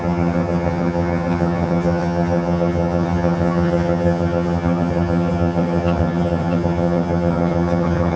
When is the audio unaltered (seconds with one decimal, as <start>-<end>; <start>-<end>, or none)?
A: none